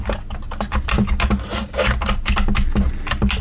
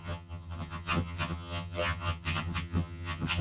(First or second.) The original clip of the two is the first